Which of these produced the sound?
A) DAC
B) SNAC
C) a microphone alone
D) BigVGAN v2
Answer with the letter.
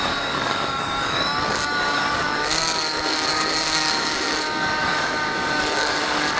A